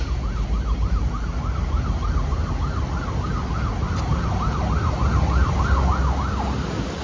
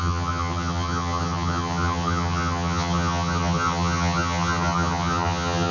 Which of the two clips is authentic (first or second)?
first